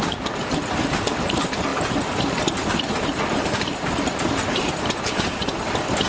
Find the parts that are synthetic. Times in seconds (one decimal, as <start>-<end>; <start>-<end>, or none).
0.0-5.4